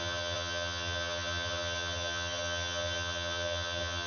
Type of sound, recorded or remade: remade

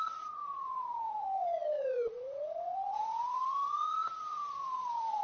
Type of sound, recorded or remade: remade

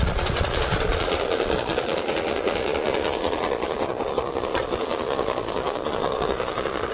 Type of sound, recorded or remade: remade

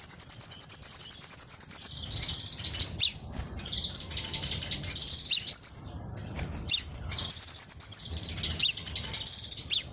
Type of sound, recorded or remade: recorded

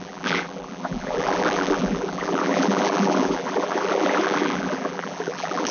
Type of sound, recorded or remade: remade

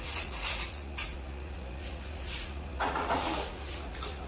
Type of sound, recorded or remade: remade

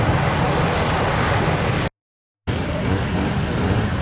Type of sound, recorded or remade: recorded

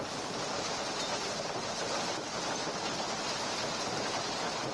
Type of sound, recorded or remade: recorded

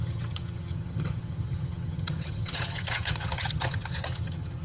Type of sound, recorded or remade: remade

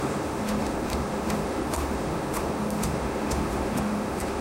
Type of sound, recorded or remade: remade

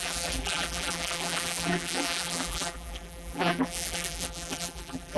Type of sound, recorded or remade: remade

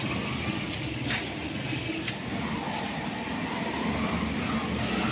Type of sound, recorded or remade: recorded